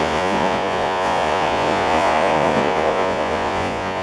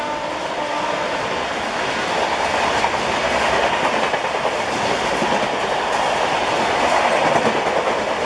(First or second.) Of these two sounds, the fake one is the first